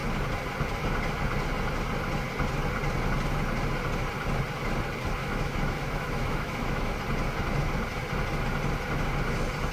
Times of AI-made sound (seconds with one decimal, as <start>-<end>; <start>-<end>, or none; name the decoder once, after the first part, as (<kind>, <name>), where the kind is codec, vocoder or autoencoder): 5.2-7.0 (autoencoder, DAC-VAE)